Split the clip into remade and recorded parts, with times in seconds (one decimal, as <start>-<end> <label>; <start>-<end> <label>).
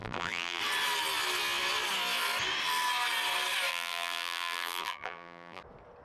0.0-0.6 remade; 0.6-3.7 recorded; 3.7-5.6 remade; 5.6-6.0 recorded